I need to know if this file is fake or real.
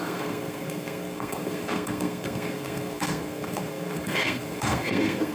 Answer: fake